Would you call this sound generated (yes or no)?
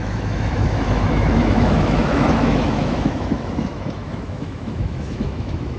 yes